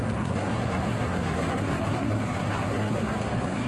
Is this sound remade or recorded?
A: remade